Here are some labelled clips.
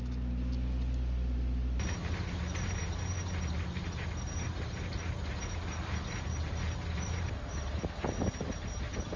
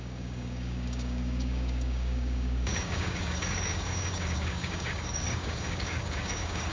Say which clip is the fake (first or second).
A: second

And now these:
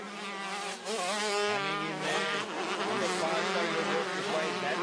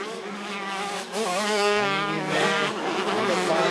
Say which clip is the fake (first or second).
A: second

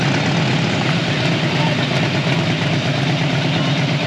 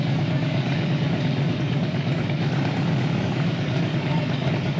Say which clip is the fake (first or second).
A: second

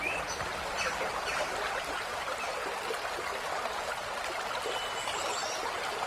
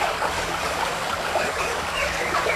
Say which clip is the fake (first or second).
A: second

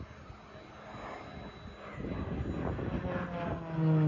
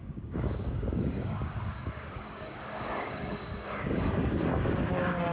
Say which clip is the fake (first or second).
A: second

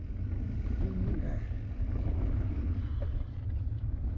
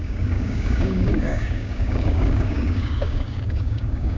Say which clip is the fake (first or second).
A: second